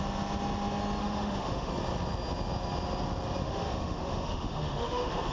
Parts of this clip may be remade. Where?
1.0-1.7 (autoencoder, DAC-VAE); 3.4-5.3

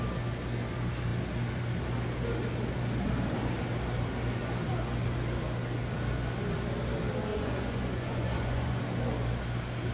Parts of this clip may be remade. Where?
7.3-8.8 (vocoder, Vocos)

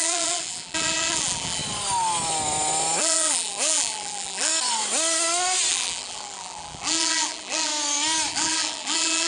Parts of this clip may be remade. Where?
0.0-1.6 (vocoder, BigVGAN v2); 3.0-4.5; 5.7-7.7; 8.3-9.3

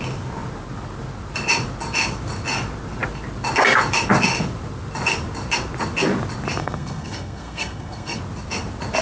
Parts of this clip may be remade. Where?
6.6-8.2 (codec, SNAC)

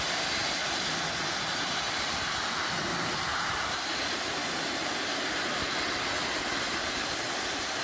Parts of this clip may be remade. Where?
2.9-4.0 (vocoder, BigVGAN v2); 4.4-5.1

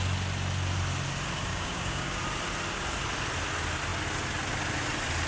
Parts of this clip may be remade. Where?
1.5-2.2 (codec, DAC)

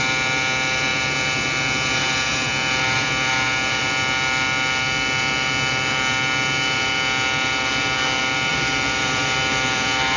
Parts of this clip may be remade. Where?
8.5-10.2 (vocoder, BigVGAN v2)